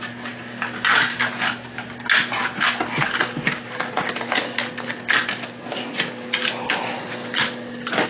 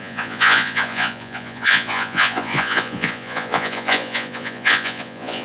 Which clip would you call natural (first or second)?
first